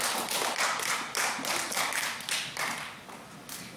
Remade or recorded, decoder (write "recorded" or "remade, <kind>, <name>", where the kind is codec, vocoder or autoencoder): recorded